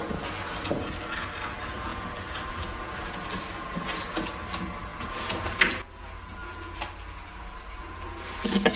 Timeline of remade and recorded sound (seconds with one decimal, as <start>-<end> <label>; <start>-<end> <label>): 0.0-8.8 recorded